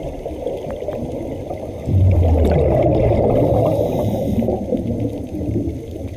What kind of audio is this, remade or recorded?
recorded